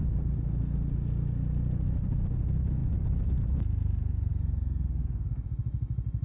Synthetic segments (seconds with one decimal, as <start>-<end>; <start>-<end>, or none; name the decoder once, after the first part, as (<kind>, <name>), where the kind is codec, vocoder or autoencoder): none